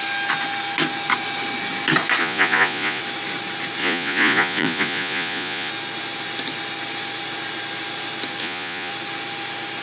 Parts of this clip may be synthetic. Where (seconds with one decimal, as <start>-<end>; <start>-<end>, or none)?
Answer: 2.2-3.0; 3.8-5.7; 8.4-8.9